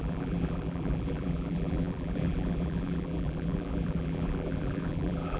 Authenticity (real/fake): fake